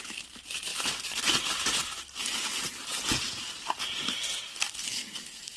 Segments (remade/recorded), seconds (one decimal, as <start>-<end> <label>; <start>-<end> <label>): 0.0-4.5 recorded; 4.5-5.6 remade